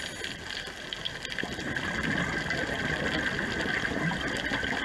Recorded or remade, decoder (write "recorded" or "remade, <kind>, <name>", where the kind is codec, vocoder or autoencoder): recorded